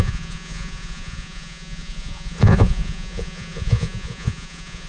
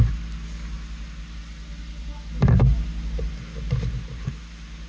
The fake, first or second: first